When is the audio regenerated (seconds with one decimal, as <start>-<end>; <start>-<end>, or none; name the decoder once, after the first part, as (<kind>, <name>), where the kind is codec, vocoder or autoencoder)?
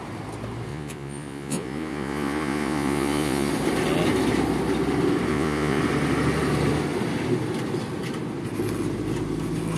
0.7-3.5 (vocoder, Vocos); 5.3-5.8